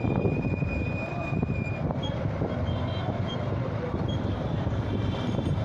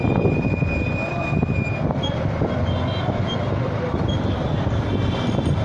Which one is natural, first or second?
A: second